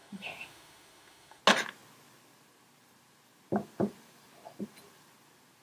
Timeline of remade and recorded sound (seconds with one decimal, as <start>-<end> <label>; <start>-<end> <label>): 0.0-1.4 remade; 1.4-5.6 recorded